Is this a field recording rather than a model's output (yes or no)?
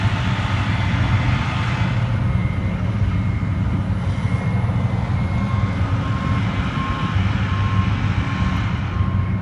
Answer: yes